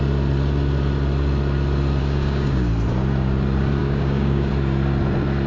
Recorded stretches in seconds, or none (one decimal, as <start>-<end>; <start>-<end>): 0.0-2.0; 2.7-3.8; 4.5-5.5